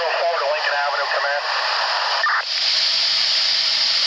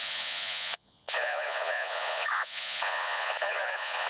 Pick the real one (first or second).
first